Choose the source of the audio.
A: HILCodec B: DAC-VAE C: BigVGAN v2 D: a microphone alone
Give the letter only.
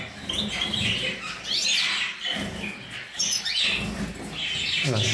D